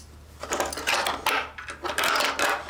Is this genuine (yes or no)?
yes